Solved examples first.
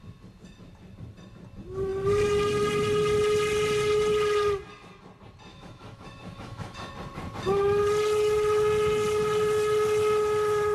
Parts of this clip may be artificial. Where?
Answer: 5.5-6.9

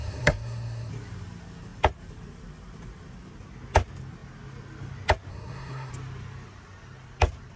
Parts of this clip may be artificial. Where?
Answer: 0.0-0.9; 5.3-5.9